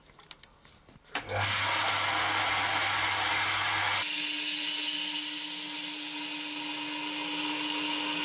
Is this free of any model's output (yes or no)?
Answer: yes